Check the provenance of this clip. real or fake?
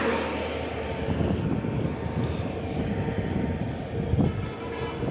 real